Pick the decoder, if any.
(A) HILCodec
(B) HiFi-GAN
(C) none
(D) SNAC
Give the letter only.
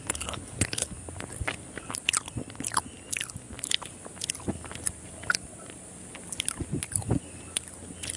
C